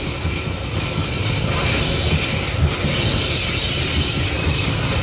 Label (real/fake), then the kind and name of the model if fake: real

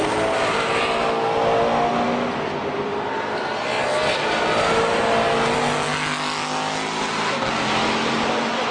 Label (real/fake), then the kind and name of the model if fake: real